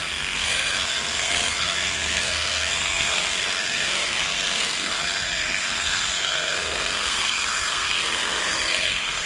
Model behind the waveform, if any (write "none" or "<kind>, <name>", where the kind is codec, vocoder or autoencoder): codec, SNAC